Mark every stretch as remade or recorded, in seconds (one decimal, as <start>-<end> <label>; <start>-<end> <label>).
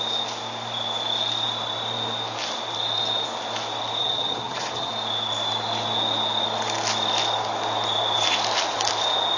0.0-4.0 recorded; 4.0-4.9 remade; 4.9-9.4 recorded